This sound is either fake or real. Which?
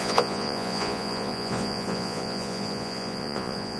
fake